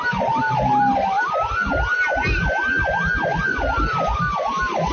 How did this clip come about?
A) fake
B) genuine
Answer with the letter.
B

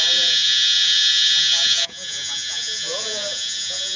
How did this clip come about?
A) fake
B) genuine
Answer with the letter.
A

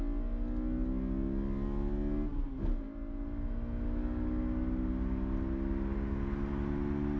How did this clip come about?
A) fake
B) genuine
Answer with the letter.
B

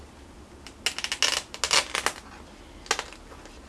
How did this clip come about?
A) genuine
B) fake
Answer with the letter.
A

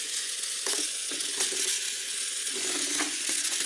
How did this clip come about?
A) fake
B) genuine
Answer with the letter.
A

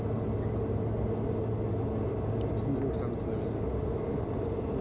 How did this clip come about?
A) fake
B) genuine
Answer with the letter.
B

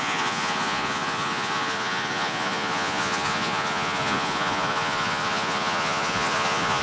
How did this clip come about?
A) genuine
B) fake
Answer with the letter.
B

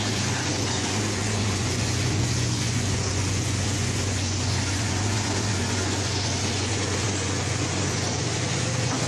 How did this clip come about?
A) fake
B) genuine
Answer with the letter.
A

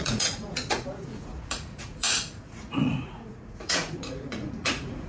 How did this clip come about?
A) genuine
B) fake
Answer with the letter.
B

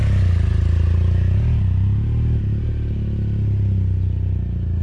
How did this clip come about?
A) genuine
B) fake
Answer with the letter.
A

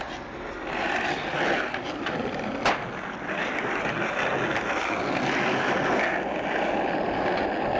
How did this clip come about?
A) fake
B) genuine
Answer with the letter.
B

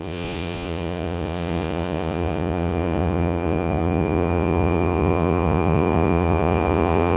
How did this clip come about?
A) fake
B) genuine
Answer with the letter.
A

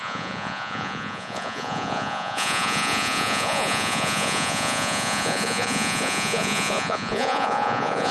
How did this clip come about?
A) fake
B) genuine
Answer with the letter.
A